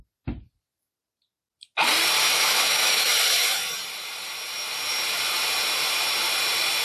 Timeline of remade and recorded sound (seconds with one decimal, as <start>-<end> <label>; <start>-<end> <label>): 0.0-2.3 recorded; 2.3-3.1 remade; 3.1-6.8 recorded

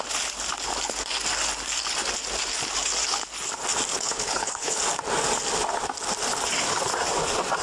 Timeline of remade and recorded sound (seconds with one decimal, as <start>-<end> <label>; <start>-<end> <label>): 0.0-3.9 recorded; 3.9-4.8 remade; 4.8-7.6 recorded

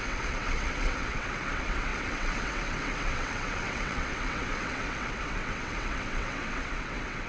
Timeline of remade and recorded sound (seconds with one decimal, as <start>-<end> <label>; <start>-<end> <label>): 0.0-7.3 remade

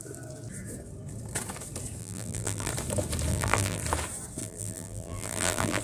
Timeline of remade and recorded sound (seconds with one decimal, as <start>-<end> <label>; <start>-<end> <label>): 0.0-2.0 recorded; 2.0-2.7 remade; 2.7-3.3 recorded; 3.3-3.8 remade; 3.8-4.4 recorded; 4.4-5.8 remade